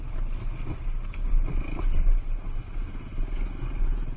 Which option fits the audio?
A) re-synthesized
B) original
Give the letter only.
B